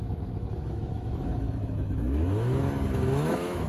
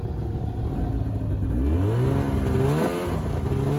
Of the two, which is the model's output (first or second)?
first